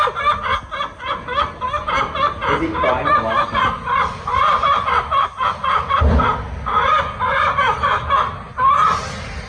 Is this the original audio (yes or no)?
yes